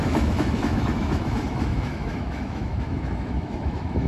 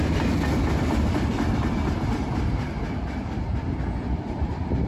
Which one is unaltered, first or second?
second